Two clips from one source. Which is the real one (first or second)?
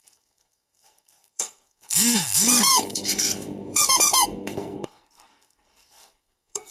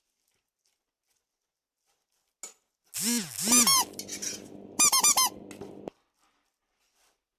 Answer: second